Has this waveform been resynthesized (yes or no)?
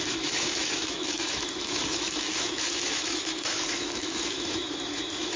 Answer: yes